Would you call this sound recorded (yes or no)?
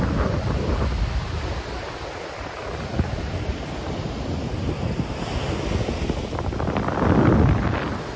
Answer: yes